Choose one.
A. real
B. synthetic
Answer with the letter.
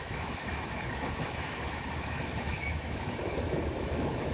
B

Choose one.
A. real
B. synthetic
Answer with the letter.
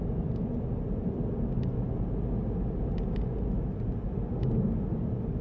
A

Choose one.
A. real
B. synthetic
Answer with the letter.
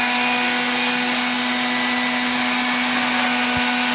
A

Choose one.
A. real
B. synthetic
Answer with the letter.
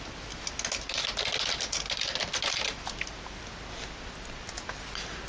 A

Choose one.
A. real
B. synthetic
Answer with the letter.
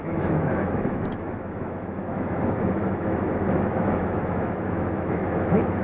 B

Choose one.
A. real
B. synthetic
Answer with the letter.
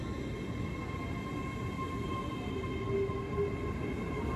A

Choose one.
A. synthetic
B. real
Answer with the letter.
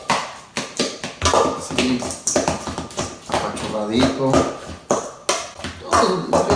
B